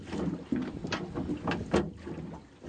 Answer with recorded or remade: recorded